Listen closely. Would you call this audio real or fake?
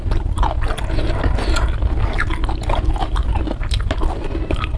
real